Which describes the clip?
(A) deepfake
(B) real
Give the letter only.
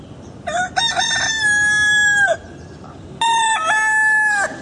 B